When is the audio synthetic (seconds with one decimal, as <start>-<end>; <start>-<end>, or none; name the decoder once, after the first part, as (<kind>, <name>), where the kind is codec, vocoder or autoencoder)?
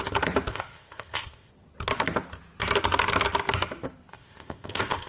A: 0.5-1.5 (codec, ZipCodec); 4.1-5.1